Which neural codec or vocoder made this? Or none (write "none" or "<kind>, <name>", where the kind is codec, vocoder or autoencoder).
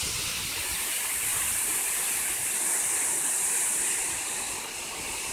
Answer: none